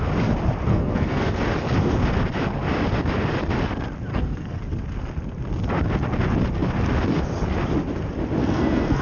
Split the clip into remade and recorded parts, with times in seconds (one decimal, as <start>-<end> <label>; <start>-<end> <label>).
0.0-0.7 recorded; 0.7-1.4 remade; 1.4-4.1 recorded; 4.1-4.6 remade; 4.6-8.4 recorded; 8.4-9.0 remade